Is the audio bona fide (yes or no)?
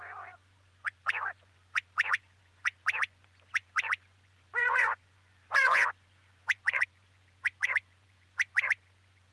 no